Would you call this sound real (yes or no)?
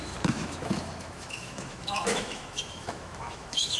no